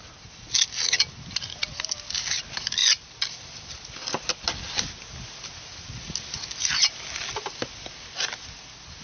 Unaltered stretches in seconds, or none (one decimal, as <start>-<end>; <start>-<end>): 0.0-9.0